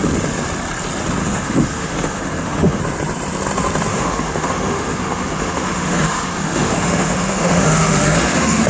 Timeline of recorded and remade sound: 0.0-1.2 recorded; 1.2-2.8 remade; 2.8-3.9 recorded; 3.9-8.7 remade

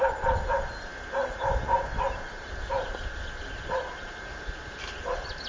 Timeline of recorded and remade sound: 0.0-5.5 recorded

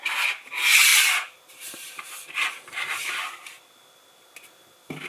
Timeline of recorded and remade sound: 0.0-5.1 recorded

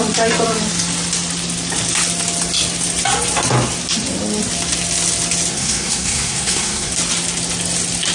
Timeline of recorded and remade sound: 0.0-5.5 recorded; 5.5-6.9 remade; 6.9-8.1 recorded

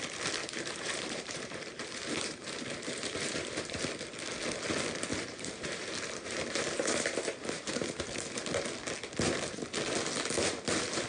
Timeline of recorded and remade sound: 0.0-0.4 recorded; 0.4-3.9 remade; 3.9-5.1 recorded; 5.1-8.0 remade; 8.0-11.1 recorded

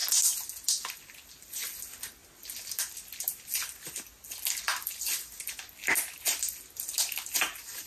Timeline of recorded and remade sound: 0.0-7.9 recorded

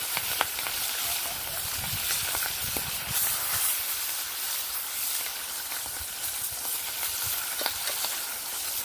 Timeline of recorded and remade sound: 0.0-8.8 remade